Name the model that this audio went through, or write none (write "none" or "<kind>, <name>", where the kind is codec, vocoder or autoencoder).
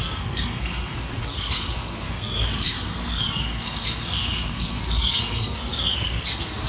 codec, SNAC